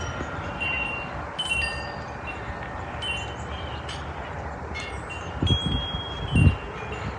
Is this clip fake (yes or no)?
no